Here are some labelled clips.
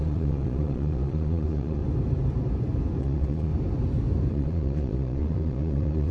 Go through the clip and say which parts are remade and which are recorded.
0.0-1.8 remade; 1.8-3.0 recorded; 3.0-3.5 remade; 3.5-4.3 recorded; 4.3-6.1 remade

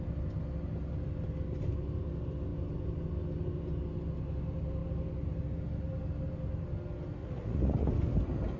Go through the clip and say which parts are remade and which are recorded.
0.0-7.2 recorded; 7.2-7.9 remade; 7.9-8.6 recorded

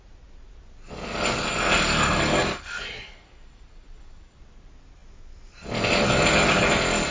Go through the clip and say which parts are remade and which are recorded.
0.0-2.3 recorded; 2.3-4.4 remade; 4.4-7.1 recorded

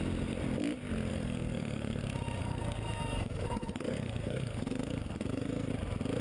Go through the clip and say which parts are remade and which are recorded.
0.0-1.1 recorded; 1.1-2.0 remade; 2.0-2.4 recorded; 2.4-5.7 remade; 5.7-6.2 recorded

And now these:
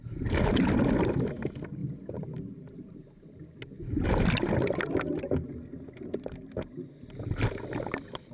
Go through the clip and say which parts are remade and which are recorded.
0.0-8.3 recorded

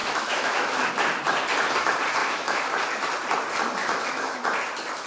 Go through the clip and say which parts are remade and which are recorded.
0.0-0.9 remade; 0.9-2.2 recorded; 2.2-2.7 remade; 2.7-3.8 recorded; 3.8-4.4 remade; 4.4-5.1 recorded